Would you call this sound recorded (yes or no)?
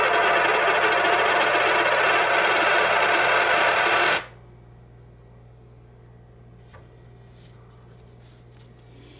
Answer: yes